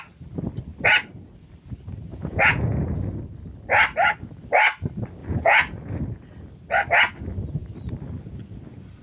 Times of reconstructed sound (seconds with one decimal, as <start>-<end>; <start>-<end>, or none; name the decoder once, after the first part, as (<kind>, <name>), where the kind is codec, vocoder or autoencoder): 2.1-3.0 (vocoder, Vocos); 5.2-5.8